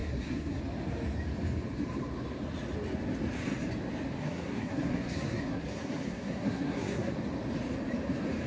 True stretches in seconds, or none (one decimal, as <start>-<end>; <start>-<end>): 0.6-4.2; 7.1-8.5